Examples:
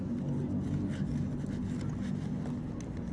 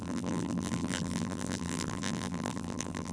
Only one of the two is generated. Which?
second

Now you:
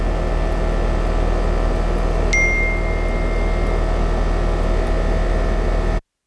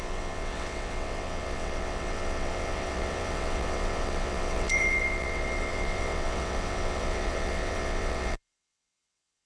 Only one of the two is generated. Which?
second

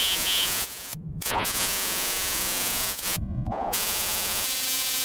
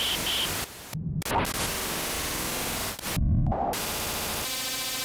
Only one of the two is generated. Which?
first